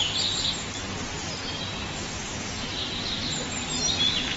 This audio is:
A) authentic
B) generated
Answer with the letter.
A